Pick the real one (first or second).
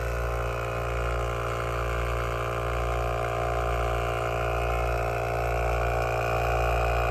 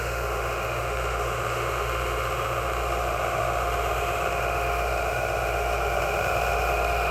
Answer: first